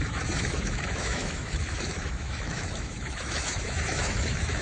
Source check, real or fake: fake